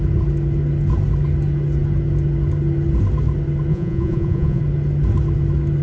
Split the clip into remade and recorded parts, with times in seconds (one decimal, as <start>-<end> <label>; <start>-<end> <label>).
0.0-3.7 recorded; 3.7-4.6 remade; 4.6-5.8 recorded